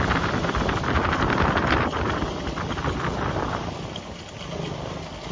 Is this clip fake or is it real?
real